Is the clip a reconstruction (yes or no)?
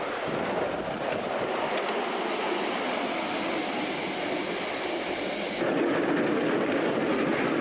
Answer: no